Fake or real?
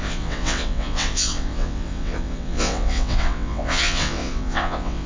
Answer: fake